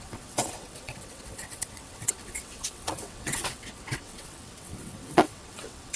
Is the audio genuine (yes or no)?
no